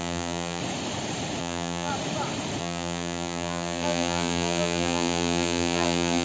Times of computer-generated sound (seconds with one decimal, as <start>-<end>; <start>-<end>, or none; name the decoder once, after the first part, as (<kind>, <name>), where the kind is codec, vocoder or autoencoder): 0.0-0.6 (vocoder, BigVGAN v2); 1.4-1.9; 2.6-6.2